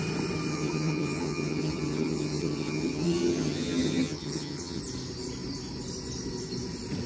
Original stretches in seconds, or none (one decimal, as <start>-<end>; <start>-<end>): 0.0-0.5; 4.8-7.1